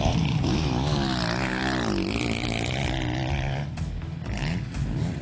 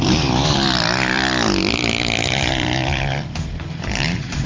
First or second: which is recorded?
first